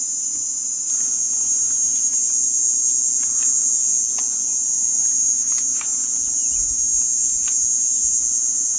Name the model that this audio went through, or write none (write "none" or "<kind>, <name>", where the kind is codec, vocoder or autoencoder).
none